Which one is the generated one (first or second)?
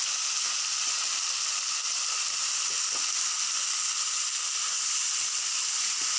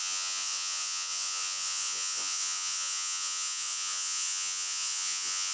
second